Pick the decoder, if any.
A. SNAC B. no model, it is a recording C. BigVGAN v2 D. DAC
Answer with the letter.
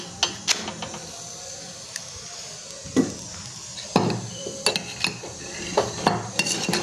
B